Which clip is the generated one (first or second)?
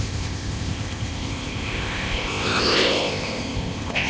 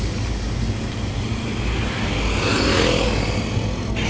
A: first